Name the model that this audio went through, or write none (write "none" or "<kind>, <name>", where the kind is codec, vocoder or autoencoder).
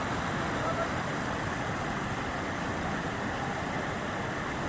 vocoder, BigVGAN v2